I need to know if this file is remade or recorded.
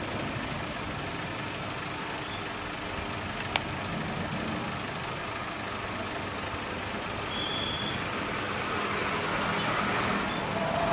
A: recorded